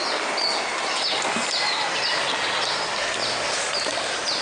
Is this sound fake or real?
real